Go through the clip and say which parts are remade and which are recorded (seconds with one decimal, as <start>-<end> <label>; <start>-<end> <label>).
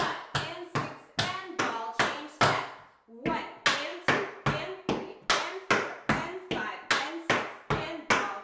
0.0-8.4 recorded